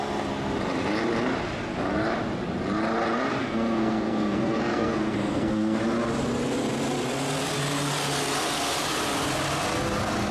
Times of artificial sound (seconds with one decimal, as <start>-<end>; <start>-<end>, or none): 3.4-5.8